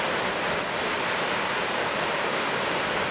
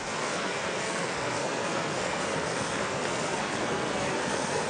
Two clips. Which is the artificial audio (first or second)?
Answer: second